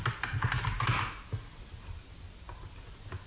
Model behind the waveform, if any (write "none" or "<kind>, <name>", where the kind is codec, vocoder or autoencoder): none